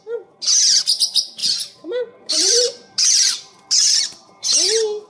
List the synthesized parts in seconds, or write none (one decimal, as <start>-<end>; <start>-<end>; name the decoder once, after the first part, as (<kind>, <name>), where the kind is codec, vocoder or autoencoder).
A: 1.4-4.5 (vocoder, BigVGAN v2)